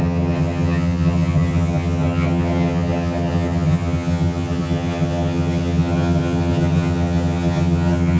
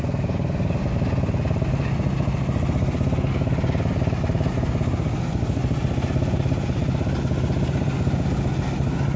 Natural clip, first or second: second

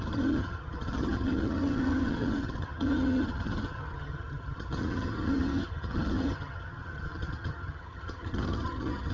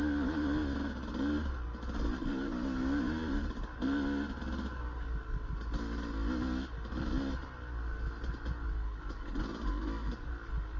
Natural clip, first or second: second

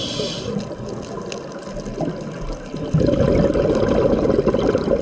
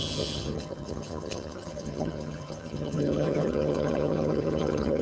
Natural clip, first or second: first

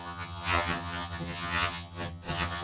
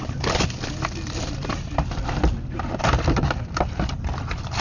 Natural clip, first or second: second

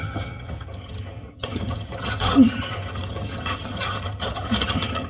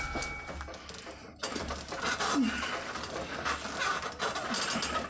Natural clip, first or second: second